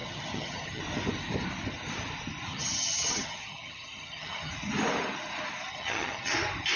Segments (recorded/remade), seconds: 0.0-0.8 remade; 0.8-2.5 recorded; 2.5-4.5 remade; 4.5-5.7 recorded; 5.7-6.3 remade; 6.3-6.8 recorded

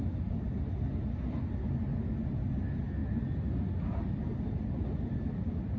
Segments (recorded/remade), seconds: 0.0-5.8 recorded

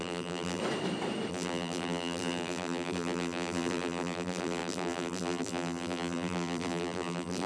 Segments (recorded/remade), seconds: 0.0-0.6 remade; 0.6-1.3 recorded; 1.3-7.5 remade

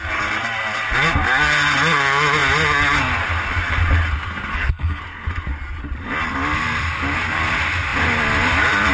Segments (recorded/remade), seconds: 0.0-4.5 recorded; 4.5-5.0 remade; 5.0-8.9 recorded

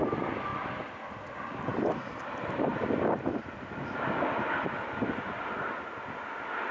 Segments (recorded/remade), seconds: 0.0-6.7 recorded

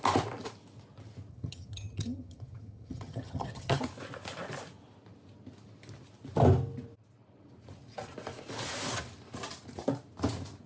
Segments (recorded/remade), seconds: 0.0-1.3 recorded; 1.3-3.8 remade; 3.8-10.7 recorded

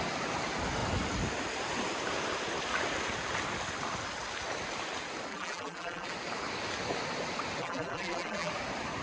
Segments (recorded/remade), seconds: 0.0-5.3 recorded; 5.3-6.1 remade; 6.1-7.6 recorded; 7.6-8.5 remade; 8.5-9.0 recorded

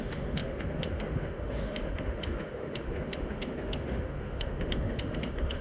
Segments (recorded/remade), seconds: 0.0-5.6 remade